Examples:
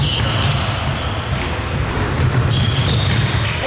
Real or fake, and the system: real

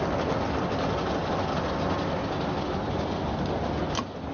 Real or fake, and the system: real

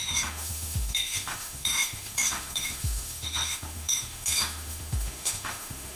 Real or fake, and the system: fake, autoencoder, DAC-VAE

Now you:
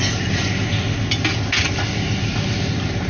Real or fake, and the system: real